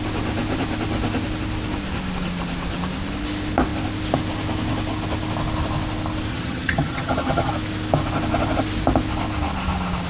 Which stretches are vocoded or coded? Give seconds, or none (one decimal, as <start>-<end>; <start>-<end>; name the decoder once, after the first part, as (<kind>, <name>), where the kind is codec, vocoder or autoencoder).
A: 6.3-7.5 (vocoder, HiFi-GAN)